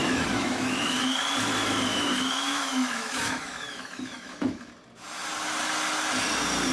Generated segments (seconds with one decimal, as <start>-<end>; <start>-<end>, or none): 0.0-1.2; 1.9-4.7